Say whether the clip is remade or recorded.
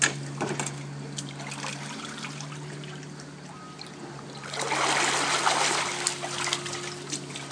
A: recorded